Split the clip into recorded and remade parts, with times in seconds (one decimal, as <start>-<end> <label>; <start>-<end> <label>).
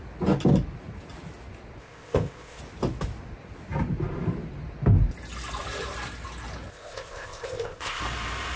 0.0-1.8 recorded; 1.8-2.6 remade; 2.6-6.7 recorded; 6.7-8.0 remade; 8.0-8.6 recorded